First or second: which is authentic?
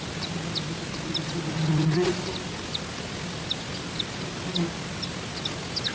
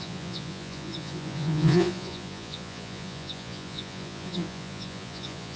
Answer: first